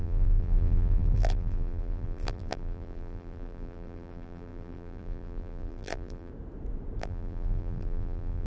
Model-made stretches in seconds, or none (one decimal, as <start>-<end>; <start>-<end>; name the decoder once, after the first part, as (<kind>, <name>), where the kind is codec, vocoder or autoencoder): 0.0-6.3 (vocoder, BigVGAN v2); 7.0-8.5